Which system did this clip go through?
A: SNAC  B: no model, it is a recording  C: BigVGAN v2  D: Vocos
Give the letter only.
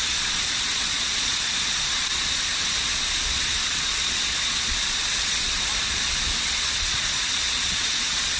D